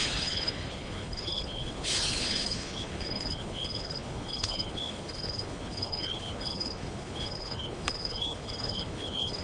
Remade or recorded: remade